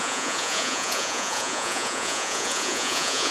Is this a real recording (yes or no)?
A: no